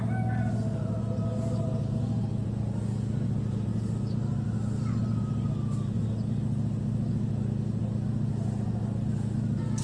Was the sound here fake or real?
real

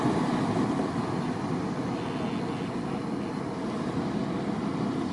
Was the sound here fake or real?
real